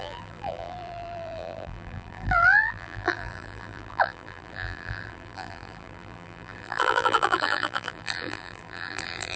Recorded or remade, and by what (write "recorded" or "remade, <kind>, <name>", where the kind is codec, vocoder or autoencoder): remade, vocoder, BigVGAN v2